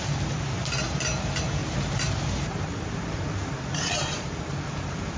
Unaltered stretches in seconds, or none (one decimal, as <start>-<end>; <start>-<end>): none